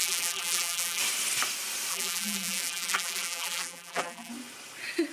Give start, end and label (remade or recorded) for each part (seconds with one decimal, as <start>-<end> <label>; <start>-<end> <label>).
0.0-1.0 remade; 1.0-1.9 recorded; 1.9-4.3 remade; 4.3-5.1 recorded

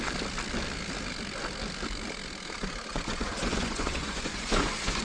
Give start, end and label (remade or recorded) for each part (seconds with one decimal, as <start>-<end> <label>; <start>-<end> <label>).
0.0-2.9 recorded; 2.9-5.0 remade

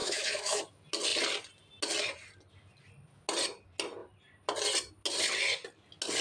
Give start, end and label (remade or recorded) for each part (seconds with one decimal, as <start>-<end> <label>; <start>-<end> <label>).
0.0-0.6 remade; 0.6-6.2 recorded